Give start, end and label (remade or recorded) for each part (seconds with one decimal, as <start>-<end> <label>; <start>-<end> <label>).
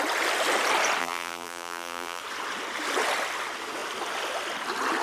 0.0-1.0 recorded; 1.0-2.2 remade; 2.2-5.0 recorded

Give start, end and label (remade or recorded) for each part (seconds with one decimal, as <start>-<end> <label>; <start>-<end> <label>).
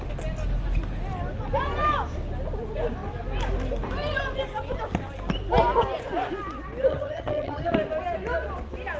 0.0-6.9 recorded; 6.9-7.7 remade; 7.7-9.0 recorded